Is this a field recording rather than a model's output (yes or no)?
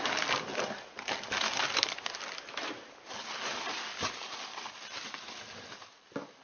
yes